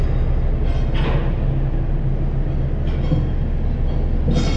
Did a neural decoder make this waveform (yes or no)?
no